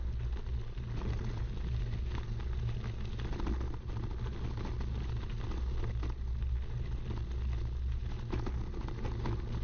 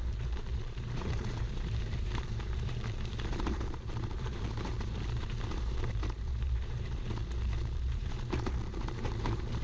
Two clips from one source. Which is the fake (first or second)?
second